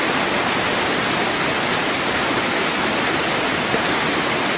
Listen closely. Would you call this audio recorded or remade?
recorded